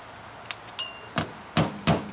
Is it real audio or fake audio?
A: real